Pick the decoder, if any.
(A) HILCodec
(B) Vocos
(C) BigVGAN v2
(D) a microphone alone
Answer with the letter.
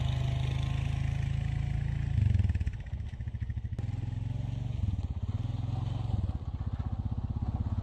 D